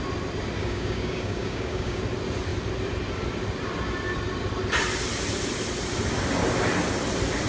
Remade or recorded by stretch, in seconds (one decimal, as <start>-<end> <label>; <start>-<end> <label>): 0.0-0.6 recorded; 0.6-2.0 remade; 2.0-7.5 recorded